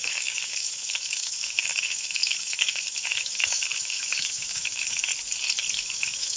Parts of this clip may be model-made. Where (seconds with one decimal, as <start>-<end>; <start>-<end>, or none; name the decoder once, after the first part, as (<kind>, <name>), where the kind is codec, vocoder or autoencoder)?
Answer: 0.0-5.1 (autoencoder, DAC-VAE); 5.7-6.4